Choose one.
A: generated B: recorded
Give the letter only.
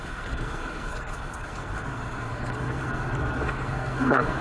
A